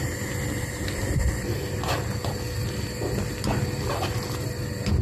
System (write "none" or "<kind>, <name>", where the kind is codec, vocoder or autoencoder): none